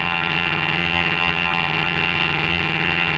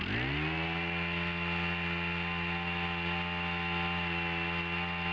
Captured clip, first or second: second